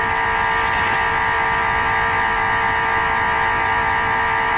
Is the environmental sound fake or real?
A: real